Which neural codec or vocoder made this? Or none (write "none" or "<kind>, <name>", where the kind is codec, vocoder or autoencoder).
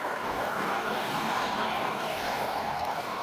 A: codec, DAC